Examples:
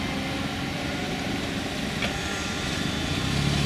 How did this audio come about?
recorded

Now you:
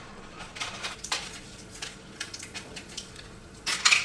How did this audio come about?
remade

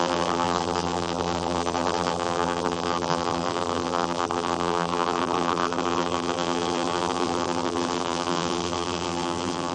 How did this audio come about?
remade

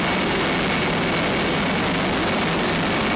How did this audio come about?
recorded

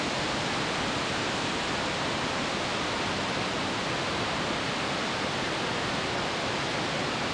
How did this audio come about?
recorded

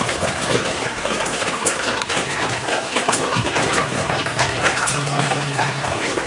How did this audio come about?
remade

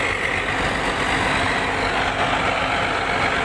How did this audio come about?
recorded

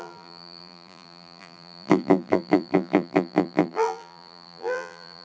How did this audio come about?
remade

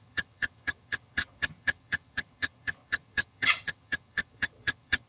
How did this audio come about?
remade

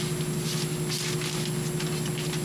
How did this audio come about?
recorded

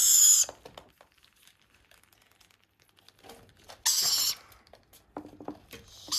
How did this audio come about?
recorded